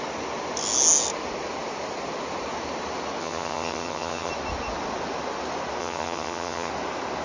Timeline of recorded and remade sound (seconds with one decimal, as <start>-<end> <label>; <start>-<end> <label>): 0.0-3.2 recorded; 3.2-4.3 remade; 4.3-5.8 recorded; 5.8-6.7 remade; 6.7-7.2 recorded